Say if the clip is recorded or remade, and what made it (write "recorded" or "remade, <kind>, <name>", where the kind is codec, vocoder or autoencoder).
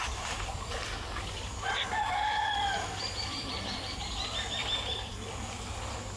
remade, vocoder, BigVGAN v2